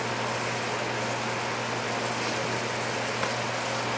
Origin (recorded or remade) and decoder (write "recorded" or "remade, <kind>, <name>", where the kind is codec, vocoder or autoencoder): recorded